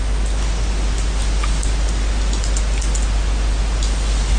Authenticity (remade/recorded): recorded